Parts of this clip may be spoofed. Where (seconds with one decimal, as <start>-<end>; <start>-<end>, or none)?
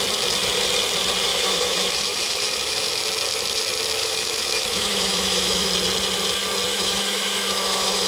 1.3-3.0; 4.0-5.7; 6.7-8.1